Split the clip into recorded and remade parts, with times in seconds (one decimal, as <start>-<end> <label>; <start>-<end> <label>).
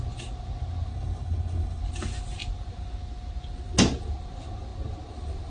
0.0-0.9 recorded; 0.9-1.8 remade; 1.8-5.5 recorded